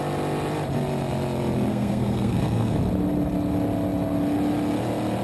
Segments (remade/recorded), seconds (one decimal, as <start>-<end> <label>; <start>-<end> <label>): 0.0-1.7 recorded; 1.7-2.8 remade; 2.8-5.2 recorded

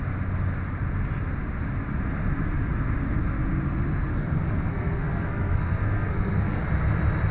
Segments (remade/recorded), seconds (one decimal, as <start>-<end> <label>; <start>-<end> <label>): 0.0-4.1 recorded; 4.1-6.6 remade; 6.6-7.3 recorded

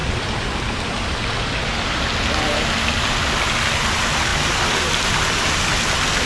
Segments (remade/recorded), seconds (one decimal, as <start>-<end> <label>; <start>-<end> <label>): 0.0-6.3 recorded

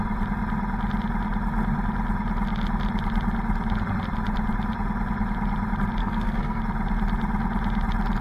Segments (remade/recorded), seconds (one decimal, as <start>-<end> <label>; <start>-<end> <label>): 0.0-6.0 recorded; 6.0-6.6 remade; 6.6-8.2 recorded